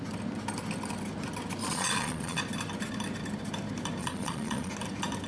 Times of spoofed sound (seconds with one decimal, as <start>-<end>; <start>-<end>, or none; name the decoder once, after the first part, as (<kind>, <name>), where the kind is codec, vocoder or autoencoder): 1.6-2.4 (vocoder, Vocos); 4.0-4.7